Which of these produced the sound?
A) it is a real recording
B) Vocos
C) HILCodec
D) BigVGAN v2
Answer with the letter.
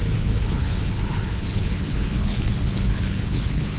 C